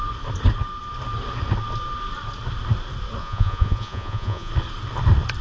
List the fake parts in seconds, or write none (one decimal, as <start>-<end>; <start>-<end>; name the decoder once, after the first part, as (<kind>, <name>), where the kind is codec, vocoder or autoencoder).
3.2-4.5 (vocoder, Vocos)